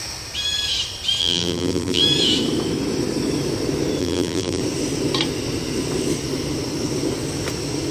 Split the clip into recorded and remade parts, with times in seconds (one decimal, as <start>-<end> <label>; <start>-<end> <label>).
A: 0.0-1.2 recorded; 1.2-2.0 remade; 2.0-4.0 recorded; 4.0-4.6 remade; 4.6-7.9 recorded